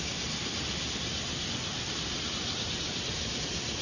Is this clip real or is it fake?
real